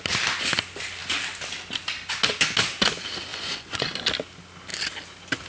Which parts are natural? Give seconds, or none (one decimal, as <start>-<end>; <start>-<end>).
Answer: 0.0-3.3; 3.9-5.5